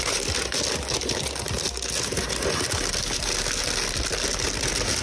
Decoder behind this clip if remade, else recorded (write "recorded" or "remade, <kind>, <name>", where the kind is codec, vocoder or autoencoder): recorded